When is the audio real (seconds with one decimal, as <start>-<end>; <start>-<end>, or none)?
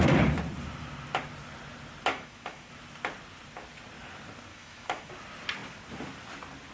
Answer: 0.0-2.1; 2.7-4.5; 5.1-6.7